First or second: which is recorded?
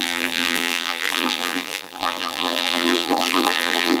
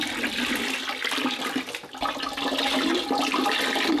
second